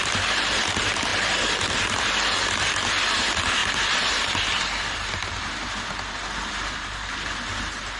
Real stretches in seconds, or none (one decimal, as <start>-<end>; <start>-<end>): 0.0-8.0